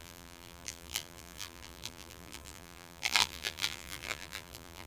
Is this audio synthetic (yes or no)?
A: yes